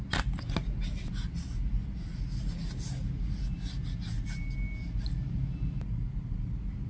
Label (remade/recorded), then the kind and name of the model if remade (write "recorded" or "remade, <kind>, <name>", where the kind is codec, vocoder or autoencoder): recorded